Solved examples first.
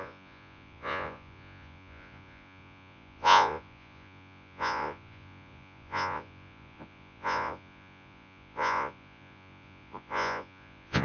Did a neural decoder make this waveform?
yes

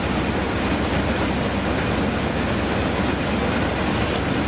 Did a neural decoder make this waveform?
no